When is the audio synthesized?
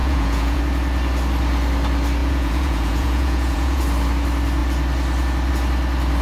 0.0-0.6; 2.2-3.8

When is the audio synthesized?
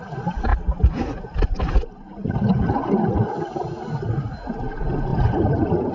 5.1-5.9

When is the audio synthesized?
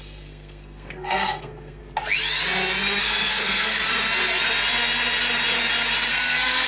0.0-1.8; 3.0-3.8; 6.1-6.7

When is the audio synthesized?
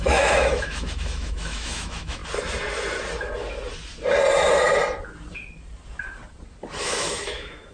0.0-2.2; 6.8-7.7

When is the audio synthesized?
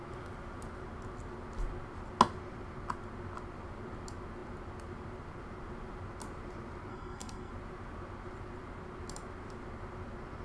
6.9-7.5